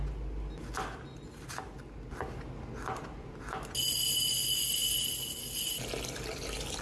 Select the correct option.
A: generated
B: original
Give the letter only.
B